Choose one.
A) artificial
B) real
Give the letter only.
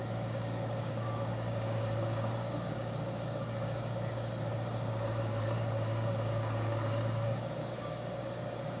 A